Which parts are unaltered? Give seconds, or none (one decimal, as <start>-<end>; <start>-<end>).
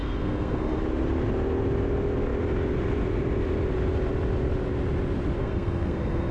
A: 0.8-5.4